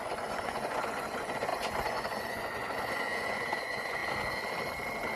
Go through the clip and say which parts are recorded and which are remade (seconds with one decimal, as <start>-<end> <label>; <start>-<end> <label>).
0.0-4.0 remade; 4.0-5.2 recorded